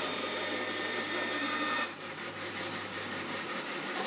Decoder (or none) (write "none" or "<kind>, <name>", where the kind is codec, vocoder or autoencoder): vocoder, BigVGAN v2